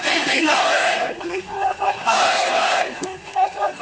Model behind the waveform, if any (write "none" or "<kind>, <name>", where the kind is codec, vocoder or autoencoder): codec, SNAC